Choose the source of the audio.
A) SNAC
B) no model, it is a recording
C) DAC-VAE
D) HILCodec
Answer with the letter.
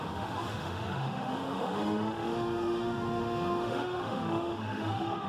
C